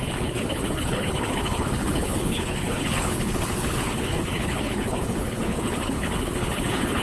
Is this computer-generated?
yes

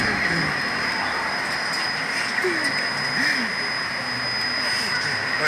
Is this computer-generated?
no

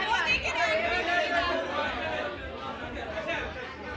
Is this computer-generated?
no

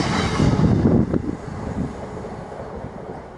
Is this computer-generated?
no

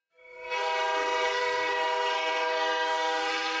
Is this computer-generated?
yes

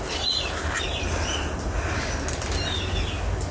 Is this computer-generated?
no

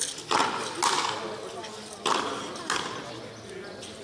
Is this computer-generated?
no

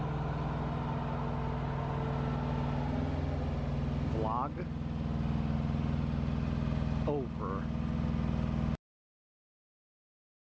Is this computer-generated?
no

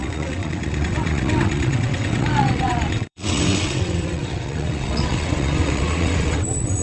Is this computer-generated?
yes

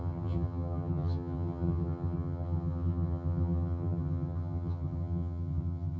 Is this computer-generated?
yes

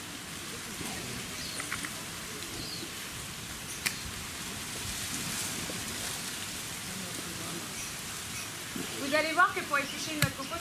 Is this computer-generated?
no